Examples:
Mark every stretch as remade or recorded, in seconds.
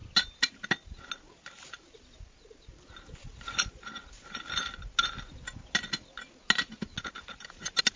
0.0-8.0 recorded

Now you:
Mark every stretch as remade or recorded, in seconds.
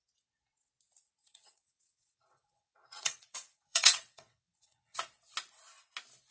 0.0-1.2 recorded; 1.2-5.0 remade; 5.0-6.3 recorded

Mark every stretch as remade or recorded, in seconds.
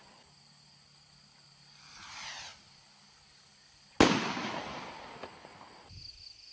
0.0-6.5 recorded